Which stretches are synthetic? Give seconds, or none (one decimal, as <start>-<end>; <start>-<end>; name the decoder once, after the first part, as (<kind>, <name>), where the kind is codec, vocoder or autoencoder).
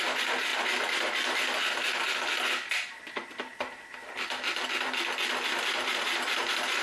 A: none